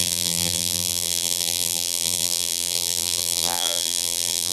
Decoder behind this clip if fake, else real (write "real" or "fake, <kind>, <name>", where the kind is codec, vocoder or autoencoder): fake, vocoder, BigVGAN v2